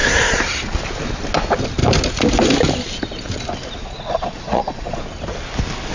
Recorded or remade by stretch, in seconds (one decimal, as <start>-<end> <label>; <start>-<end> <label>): 0.0-3.8 recorded; 3.8-5.0 remade; 5.0-5.9 recorded